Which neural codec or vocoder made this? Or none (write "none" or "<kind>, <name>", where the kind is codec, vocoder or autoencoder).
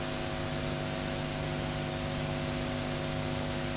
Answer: none